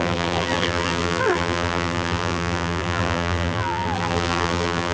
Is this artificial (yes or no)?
yes